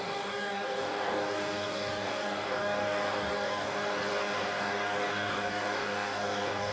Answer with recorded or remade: remade